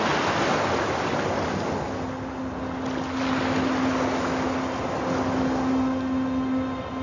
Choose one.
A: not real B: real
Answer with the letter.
B